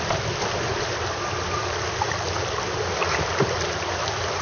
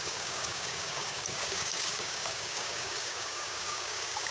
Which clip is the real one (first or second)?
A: first